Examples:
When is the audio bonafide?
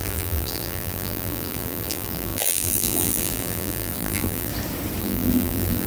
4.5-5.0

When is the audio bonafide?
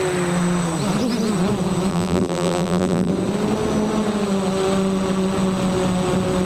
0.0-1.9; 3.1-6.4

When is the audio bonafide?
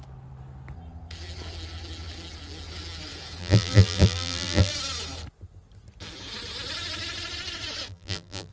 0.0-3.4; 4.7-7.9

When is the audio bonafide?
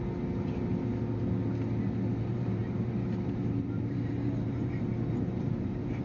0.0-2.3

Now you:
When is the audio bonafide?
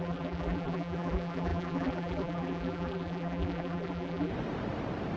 4.3-5.2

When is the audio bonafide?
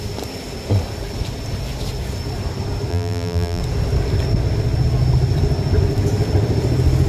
0.0-2.9; 3.6-7.1